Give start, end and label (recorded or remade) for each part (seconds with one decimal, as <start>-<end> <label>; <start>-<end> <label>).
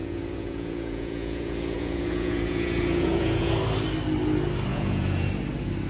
0.0-3.5 remade; 3.5-4.7 recorded; 4.7-5.3 remade; 5.3-5.9 recorded